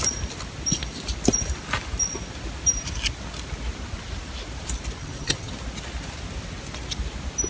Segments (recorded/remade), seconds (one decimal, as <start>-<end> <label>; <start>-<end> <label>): 0.0-5.0 recorded; 5.0-5.5 remade; 5.5-7.5 recorded